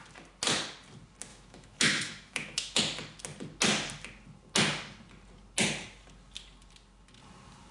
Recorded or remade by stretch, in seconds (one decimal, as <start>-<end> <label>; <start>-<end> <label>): 0.0-1.3 recorded; 1.3-2.8 remade; 2.8-7.7 recorded